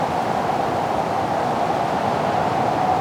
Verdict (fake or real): real